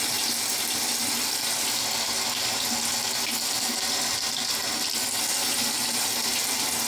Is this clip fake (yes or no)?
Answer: no